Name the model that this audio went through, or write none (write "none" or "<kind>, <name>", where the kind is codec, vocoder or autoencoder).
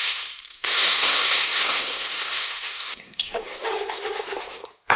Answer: codec, SNAC